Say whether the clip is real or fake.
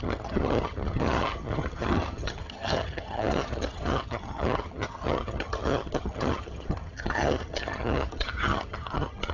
fake